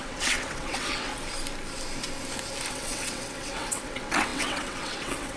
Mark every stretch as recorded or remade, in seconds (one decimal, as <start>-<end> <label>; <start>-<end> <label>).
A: 0.0-1.1 remade; 1.1-2.7 recorded; 2.7-5.4 remade

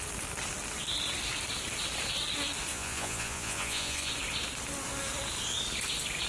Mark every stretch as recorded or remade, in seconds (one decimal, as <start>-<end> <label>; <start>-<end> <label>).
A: 0.0-2.7 recorded; 2.7-4.1 remade; 4.1-6.3 recorded

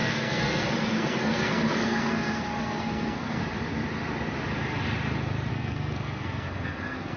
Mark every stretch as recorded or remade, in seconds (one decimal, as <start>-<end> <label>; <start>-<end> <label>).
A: 0.0-3.4 remade; 3.4-5.5 recorded; 5.5-7.2 remade

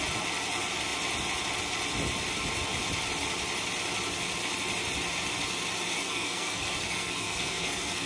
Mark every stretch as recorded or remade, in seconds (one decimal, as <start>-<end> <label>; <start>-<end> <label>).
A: 0.0-5.9 recorded; 5.9-8.1 remade

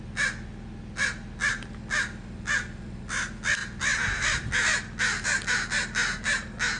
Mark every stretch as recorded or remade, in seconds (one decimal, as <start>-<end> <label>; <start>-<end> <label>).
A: 0.0-6.8 recorded

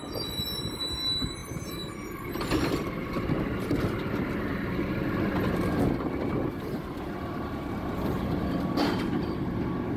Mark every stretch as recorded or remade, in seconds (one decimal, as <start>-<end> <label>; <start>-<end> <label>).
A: 0.0-10.0 recorded